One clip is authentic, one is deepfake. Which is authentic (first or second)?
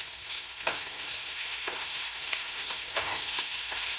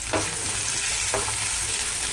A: second